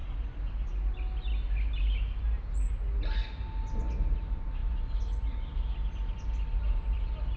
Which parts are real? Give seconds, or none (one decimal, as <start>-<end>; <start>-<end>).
0.0-7.4